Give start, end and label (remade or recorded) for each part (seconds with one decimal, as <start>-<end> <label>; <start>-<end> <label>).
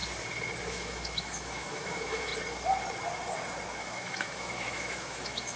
0.0-0.7 recorded; 0.7-2.3 remade; 2.3-3.8 recorded; 3.8-5.6 remade